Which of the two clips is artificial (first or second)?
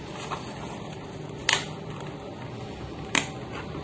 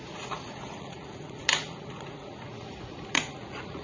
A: second